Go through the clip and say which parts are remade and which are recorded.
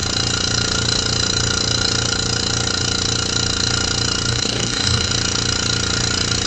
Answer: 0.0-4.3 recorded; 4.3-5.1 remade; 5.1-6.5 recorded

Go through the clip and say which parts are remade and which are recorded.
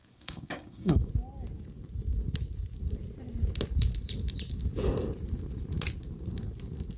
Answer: 0.0-1.1 remade; 1.1-7.0 recorded